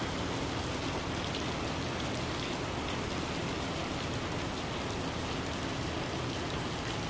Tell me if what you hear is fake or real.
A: real